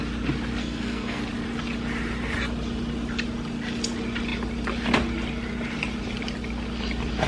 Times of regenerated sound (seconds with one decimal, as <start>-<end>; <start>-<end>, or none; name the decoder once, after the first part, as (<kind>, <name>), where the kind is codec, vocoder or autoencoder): 0.6-1.2 (codec, SNAC)